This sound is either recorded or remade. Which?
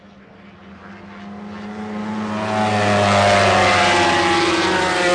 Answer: recorded